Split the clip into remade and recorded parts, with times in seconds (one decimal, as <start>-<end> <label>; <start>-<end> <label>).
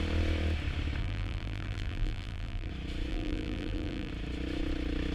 0.0-1.0 recorded; 1.0-2.7 remade; 2.7-3.1 recorded; 3.1-4.1 remade; 4.1-5.1 recorded